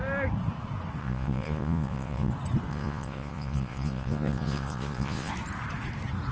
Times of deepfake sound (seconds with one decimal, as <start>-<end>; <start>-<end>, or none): 1.0-2.3; 2.7-5.3